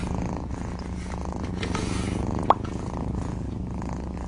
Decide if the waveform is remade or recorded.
recorded